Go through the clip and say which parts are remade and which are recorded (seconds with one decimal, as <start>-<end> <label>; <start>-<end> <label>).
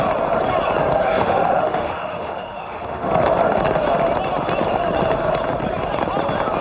0.0-1.1 recorded; 1.1-3.1 remade; 3.1-6.6 recorded